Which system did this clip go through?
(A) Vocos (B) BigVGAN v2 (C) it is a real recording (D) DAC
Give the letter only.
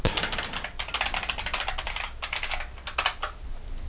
C